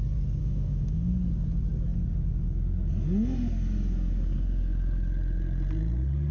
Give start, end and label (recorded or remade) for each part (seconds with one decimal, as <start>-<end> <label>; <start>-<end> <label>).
0.0-0.4 recorded; 0.4-1.1 remade; 1.1-6.3 recorded